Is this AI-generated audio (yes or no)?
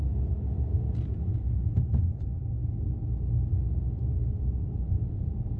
no